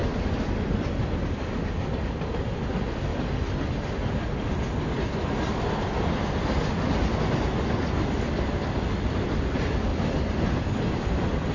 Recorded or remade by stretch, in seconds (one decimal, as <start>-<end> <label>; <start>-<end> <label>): 0.0-1.8 recorded; 1.8-3.1 remade; 3.1-7.4 recorded; 7.4-9.9 remade; 9.9-10.8 recorded; 10.8-11.5 remade